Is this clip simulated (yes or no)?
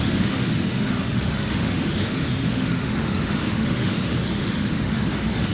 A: yes